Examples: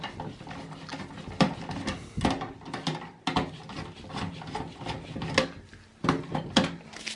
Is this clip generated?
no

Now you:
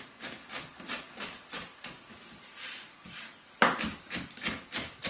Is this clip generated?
no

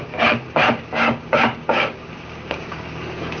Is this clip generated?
yes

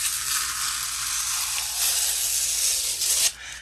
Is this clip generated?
no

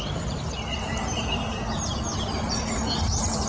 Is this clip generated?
yes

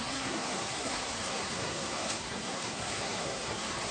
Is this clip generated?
yes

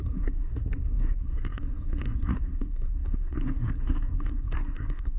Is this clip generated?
yes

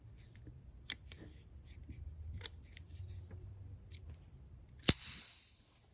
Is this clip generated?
yes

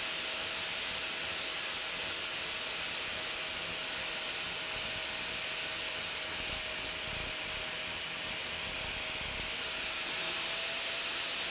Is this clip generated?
no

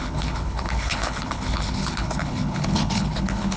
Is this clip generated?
yes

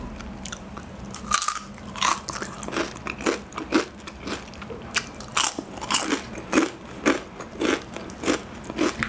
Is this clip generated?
no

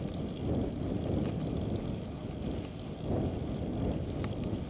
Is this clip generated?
no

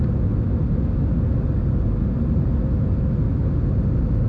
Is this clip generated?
no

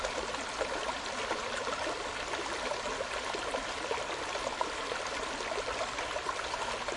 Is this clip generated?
no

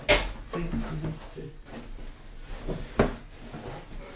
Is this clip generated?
no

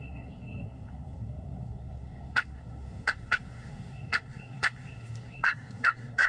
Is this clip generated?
yes